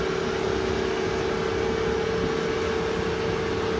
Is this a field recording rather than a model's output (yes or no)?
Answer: yes